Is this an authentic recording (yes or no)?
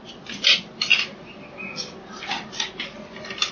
yes